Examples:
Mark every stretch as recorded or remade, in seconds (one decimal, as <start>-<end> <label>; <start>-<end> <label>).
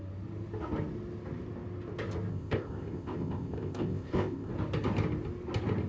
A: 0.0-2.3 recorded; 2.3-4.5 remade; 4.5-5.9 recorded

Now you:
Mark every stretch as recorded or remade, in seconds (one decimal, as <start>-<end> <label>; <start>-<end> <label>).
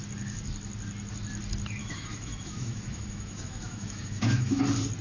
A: 0.0-1.8 recorded; 1.8-4.6 remade; 4.6-5.0 recorded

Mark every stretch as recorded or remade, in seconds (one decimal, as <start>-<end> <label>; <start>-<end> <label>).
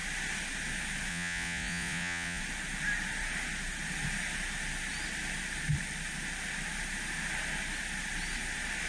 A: 0.0-1.1 recorded; 1.1-2.4 remade; 2.4-8.9 recorded